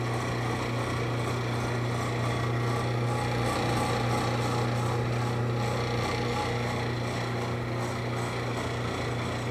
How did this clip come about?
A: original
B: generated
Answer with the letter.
A